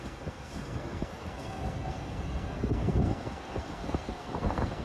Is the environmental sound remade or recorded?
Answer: remade